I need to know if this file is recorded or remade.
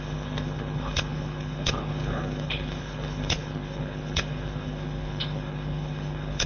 remade